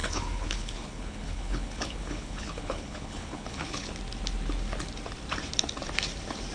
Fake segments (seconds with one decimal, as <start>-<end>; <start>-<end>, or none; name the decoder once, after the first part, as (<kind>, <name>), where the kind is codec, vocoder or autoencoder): 0.0-3.9 (codec, HILCodec)

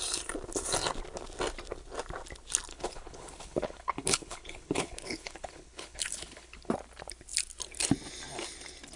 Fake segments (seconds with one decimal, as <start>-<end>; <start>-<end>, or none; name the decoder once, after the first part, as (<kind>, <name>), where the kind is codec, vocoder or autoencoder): 2.7-6.7 (codec, HILCodec)

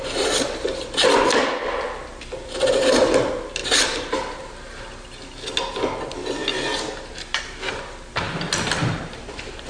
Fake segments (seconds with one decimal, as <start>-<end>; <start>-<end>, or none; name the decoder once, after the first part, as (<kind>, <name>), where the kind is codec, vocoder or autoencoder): none

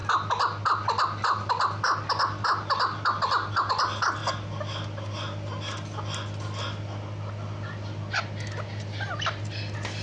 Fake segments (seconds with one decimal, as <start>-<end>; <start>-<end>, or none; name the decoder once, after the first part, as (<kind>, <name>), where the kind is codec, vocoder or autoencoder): none

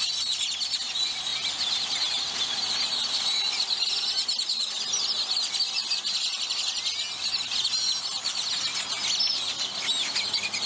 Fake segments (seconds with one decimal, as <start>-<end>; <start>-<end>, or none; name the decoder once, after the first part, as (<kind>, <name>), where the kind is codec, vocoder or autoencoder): none

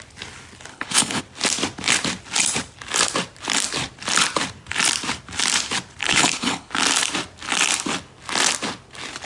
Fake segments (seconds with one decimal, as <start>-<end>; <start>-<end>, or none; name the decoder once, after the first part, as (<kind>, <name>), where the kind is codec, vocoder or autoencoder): 0.7-1.2 (codec, HILCodec); 6.0-6.7